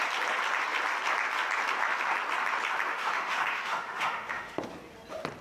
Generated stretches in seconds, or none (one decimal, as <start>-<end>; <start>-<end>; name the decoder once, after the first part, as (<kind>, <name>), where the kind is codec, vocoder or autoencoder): 2.9-4.6 (autoencoder, DAC-VAE)